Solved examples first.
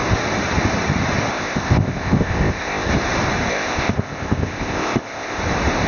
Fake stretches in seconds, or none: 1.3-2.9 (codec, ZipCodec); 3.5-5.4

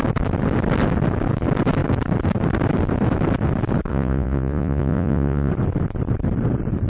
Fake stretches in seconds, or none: 3.9-5.5 (vocoder, Vocos)